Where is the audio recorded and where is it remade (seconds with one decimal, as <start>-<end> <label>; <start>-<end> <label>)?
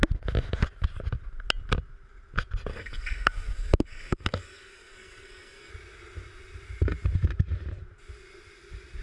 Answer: 0.0-2.7 recorded; 2.7-5.7 remade; 5.7-9.0 recorded